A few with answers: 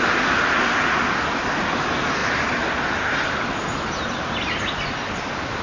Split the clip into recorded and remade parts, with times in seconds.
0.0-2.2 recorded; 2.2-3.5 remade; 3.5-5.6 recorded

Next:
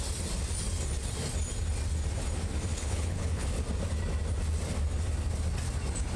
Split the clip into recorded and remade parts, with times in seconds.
0.0-2.7 recorded; 2.7-3.6 remade; 3.6-6.2 recorded

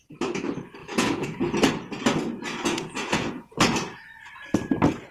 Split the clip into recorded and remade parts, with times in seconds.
0.0-0.8 recorded; 0.8-1.4 remade; 1.4-2.5 recorded; 2.5-3.6 remade; 3.6-5.1 recorded

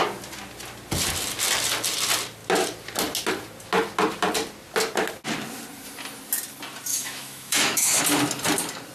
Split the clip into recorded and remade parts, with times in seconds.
0.0-6.9 recorded; 6.9-8.0 remade; 8.0-8.9 recorded

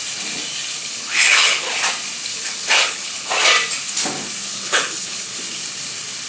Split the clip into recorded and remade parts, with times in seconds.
0.0-0.8 recorded; 0.8-1.7 remade; 1.7-2.3 recorded; 2.3-3.3 remade; 3.3-4.5 recorded; 4.5-5.4 remade; 5.4-6.3 recorded

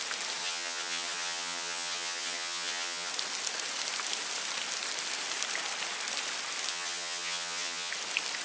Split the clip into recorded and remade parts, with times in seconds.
0.0-0.4 recorded; 0.4-3.1 remade; 3.1-6.7 recorded; 6.7-7.9 remade; 7.9-8.4 recorded